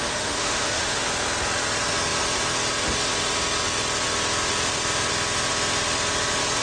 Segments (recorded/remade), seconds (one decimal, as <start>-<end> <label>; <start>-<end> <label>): 0.0-1.0 remade; 1.0-6.6 recorded